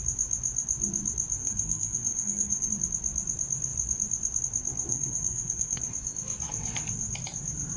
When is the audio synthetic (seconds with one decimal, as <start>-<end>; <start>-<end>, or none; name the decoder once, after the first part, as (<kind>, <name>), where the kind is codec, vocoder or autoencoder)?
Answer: 1.4-2.7 (codec, SNAC); 4.9-5.8